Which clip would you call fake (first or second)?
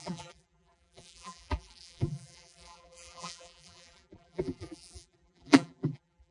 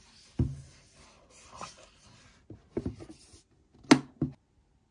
first